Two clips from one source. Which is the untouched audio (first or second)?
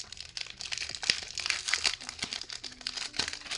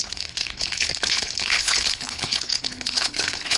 first